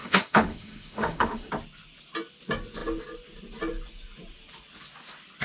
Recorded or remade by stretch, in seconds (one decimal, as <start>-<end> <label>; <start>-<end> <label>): 0.0-1.5 remade; 1.5-5.4 recorded